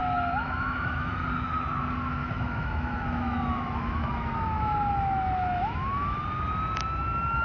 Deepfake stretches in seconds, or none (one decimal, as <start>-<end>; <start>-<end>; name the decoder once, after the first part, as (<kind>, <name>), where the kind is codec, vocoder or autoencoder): 0.0-1.1 (autoencoder, DAC-VAE); 2.2-6.2